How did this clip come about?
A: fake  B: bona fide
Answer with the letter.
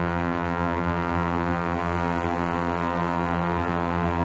A